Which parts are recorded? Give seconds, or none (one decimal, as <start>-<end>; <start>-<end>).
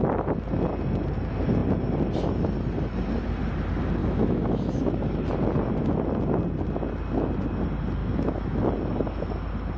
0.0-4.0; 4.8-8.0; 8.7-9.8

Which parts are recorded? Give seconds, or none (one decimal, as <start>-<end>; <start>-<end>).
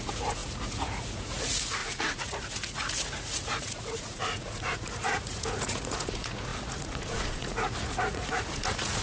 none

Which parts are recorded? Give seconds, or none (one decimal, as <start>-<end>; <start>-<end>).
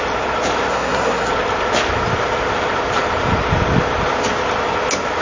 0.0-0.7; 1.3-5.2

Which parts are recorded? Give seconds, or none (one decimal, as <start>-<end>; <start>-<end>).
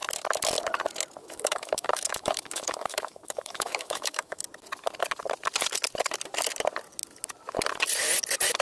0.0-1.2; 4.4-8.6